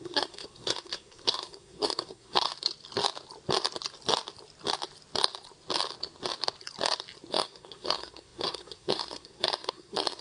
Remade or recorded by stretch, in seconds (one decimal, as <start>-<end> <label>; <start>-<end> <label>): 0.0-2.5 remade; 2.5-7.3 recorded; 7.3-10.2 remade